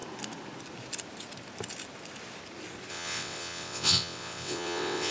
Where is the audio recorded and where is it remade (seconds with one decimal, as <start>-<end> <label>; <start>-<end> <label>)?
0.0-2.9 recorded; 2.9-5.1 remade